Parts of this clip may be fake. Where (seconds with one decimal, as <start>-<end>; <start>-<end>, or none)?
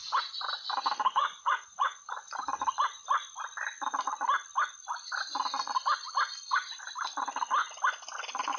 1.2-2.3